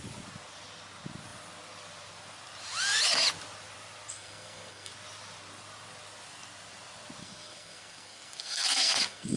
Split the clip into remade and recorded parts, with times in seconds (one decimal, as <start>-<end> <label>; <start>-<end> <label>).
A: 0.0-4.1 recorded; 4.1-4.9 remade; 4.9-7.2 recorded; 7.2-9.4 remade